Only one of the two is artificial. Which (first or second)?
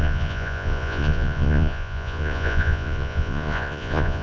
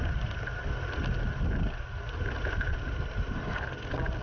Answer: first